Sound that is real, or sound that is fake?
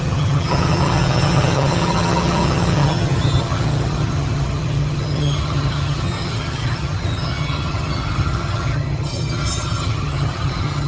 fake